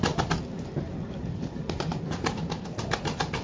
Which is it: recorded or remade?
recorded